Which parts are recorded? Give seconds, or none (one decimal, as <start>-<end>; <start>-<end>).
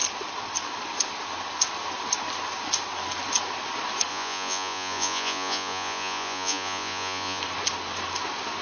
0.0-4.1; 7.4-8.6